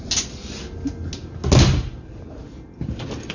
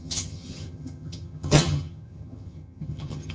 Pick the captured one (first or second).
first